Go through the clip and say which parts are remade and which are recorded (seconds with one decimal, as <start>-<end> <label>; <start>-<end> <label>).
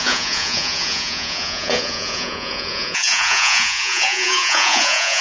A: 0.0-5.2 remade